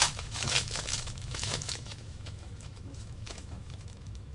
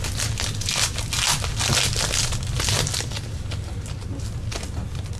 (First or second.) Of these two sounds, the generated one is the first